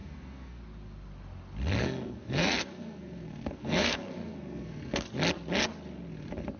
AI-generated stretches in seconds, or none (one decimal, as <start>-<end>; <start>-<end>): 0.0-0.6; 1.8-5.0